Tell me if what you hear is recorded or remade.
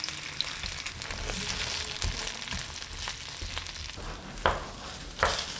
recorded